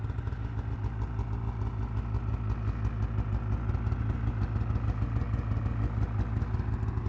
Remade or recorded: recorded